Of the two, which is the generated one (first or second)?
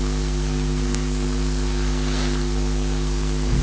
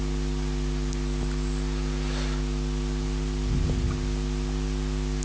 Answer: first